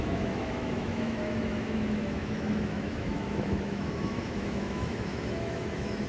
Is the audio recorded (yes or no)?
no